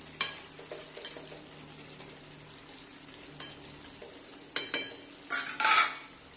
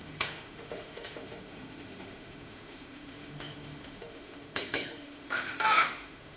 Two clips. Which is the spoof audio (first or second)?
second